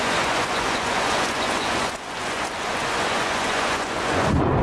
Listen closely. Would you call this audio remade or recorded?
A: remade